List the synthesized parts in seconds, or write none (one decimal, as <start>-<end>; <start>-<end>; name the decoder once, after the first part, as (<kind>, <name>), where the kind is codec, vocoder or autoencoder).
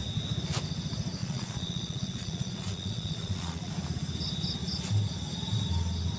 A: 1.2-3.7 (vocoder, Vocos)